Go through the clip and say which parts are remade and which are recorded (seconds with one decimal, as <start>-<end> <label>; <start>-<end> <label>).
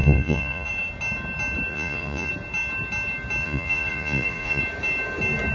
0.0-0.7 remade; 0.7-1.7 recorded; 1.7-2.3 remade; 2.3-3.4 recorded; 3.4-4.6 remade; 4.6-5.5 recorded